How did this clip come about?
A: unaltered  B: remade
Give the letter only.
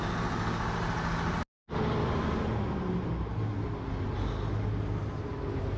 A